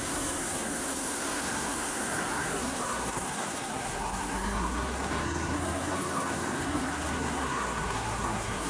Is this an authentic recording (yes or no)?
no